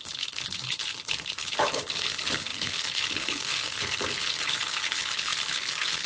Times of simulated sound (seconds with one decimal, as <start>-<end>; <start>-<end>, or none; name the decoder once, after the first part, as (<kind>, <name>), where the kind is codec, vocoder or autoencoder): 0.0-6.1 (codec, HILCodec)